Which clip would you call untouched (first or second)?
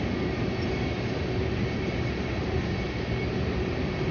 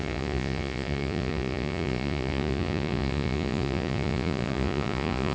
first